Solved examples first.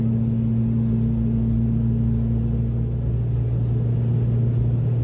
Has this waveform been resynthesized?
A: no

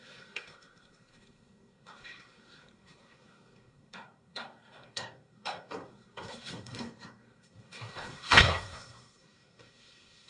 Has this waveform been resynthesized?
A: yes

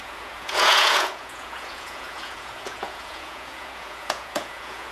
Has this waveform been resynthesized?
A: yes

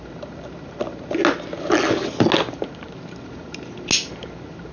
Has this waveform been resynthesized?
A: no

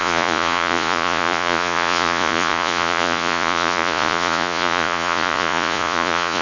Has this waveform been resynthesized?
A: yes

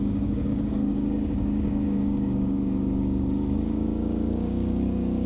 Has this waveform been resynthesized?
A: yes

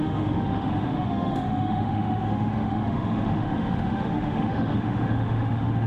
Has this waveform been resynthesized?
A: yes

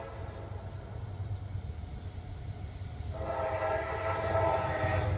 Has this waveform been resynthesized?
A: no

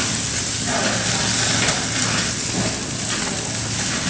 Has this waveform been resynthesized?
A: no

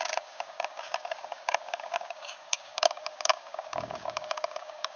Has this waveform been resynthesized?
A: yes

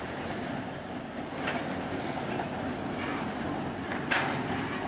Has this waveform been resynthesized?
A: no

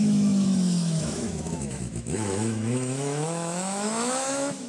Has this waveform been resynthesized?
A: yes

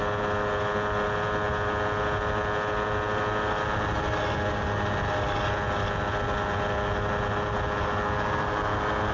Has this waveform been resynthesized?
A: no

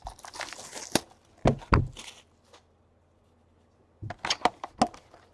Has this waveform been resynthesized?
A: no